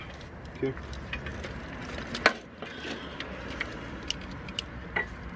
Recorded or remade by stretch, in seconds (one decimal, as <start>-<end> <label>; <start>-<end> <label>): 0.0-5.4 recorded